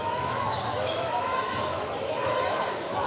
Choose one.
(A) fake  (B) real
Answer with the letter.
A